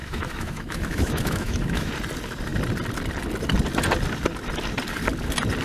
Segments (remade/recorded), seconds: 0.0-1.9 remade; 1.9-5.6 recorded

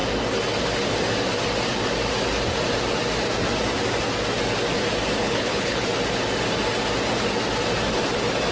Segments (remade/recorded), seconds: 0.0-5.2 recorded; 5.2-5.8 remade; 5.8-8.5 recorded